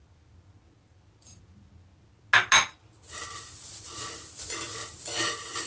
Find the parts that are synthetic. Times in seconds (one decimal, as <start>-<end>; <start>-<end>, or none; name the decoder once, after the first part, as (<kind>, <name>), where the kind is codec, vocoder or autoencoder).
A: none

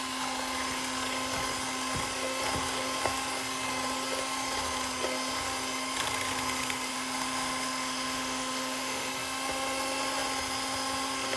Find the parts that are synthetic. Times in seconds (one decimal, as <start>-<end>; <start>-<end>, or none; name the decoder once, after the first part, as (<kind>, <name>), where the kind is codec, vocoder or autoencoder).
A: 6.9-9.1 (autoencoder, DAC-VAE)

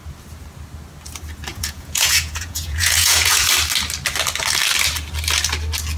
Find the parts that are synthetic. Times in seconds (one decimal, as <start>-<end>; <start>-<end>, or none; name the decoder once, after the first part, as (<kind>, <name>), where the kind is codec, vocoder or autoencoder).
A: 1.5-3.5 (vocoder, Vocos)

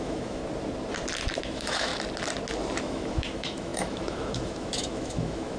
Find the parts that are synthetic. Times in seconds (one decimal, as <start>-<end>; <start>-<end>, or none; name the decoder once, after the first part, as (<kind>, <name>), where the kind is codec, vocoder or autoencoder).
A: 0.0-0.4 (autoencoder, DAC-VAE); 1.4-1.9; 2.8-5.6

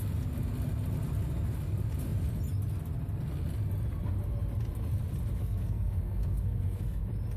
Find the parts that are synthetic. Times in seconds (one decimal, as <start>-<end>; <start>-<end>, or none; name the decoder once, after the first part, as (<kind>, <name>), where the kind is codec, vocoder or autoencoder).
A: 5.4-7.0 (codec, SNAC)

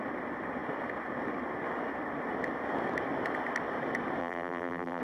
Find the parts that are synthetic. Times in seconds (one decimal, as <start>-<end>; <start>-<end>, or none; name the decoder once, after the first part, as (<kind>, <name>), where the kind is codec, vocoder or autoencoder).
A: 4.2-5.0 (vocoder, BigVGAN v2)

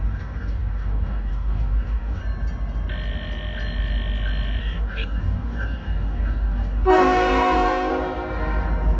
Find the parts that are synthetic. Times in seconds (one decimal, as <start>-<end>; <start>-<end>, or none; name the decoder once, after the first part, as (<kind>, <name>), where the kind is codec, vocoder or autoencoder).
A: 0.0-2.2 (codec, DAC); 4.6-7.9